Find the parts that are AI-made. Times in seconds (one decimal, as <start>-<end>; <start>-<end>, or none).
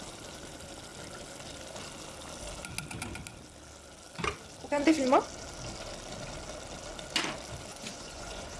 7.7-8.6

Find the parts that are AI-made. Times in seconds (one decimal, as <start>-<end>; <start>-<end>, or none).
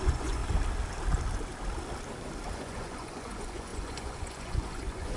0.0-0.4; 2.5-5.2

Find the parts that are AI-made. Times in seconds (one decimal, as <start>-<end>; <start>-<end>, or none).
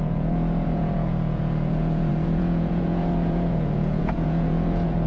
0.0-5.1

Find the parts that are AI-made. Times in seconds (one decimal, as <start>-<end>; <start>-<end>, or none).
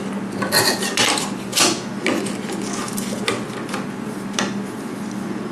none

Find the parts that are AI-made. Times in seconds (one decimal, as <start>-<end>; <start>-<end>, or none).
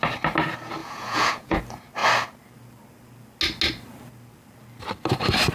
0.8-1.6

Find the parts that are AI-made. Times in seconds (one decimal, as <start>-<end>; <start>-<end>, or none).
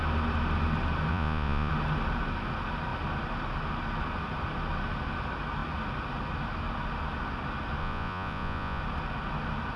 1.1-1.7; 7.8-8.8